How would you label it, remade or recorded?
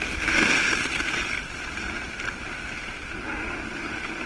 recorded